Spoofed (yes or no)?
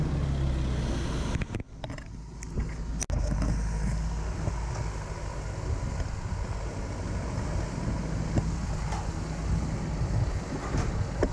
no